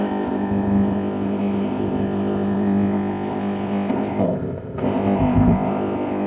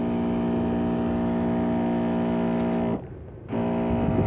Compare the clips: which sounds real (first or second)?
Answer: second